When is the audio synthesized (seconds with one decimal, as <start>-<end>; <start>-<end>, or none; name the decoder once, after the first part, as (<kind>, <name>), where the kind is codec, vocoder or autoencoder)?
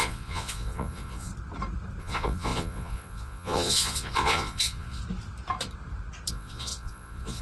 0.0-1.3 (vocoder, Vocos); 2.0-5.0; 6.3-7.4